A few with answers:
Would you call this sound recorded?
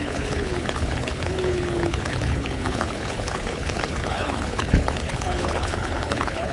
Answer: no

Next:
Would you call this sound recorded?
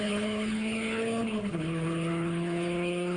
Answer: no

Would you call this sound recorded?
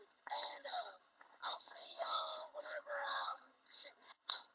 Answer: no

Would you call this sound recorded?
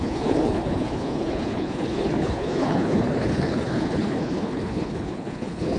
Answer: no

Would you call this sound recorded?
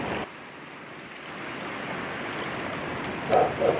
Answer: yes